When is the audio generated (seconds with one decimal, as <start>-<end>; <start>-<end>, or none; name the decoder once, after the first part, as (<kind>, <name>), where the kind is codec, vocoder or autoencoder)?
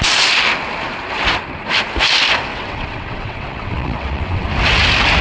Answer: 2.5-4.5 (vocoder, WaveNeXt)